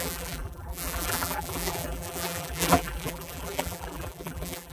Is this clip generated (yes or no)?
yes